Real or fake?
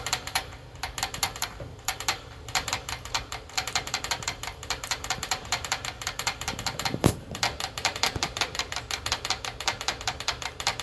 fake